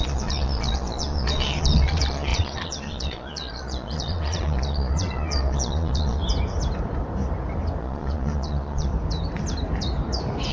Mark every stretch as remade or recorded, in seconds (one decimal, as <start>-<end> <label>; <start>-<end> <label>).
0.0-6.2 remade; 6.2-7.8 recorded; 7.8-8.9 remade; 8.9-10.5 recorded